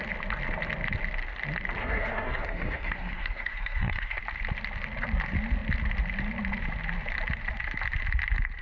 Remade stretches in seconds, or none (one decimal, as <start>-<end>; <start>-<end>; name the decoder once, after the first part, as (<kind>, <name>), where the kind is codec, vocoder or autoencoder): 1.8-4.2 (codec, SNAC)